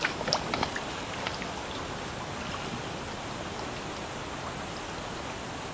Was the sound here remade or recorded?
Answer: recorded